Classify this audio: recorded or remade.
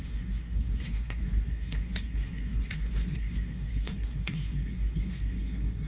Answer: remade